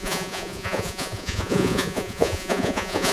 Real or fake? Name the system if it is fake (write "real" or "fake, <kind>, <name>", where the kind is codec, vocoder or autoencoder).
fake, vocoder, Vocos